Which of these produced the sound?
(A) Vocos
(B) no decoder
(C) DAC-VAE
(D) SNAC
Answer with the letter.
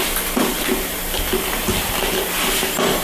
B